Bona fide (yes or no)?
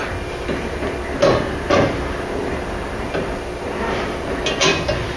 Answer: yes